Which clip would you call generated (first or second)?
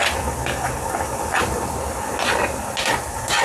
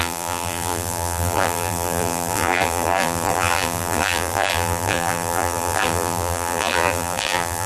second